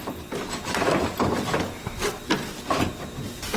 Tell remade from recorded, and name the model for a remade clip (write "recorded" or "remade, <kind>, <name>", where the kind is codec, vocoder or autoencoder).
recorded